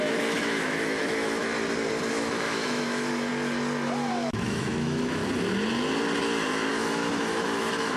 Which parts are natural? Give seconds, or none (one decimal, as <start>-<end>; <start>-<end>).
1.5-2.1; 3.3-4.1; 5.2-6.7